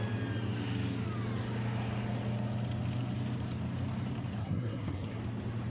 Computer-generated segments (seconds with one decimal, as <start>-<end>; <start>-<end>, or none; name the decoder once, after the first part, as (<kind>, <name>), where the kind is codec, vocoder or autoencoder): 4.4-5.2 (codec, SNAC)